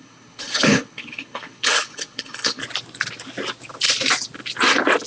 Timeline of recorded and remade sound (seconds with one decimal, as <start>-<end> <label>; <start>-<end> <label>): 0.0-2.6 remade; 2.6-5.1 recorded